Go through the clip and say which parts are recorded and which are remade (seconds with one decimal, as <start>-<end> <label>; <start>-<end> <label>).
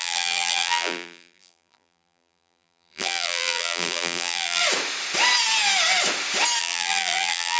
0.0-4.6 remade; 4.6-6.6 recorded; 6.6-7.6 remade